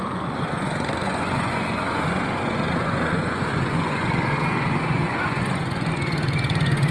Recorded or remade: remade